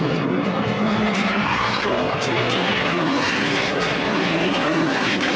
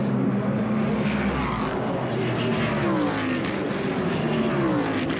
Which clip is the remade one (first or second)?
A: first